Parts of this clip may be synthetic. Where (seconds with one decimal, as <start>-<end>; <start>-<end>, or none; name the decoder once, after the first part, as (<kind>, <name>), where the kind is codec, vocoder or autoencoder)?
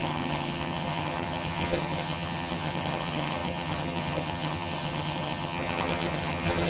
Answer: 0.0-6.7 (vocoder, HiFi-GAN)